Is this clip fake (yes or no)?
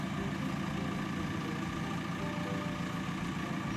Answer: no